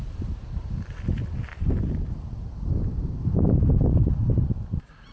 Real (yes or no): yes